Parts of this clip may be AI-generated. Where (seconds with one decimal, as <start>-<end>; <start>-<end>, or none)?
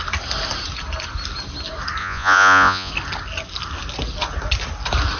2.0-2.9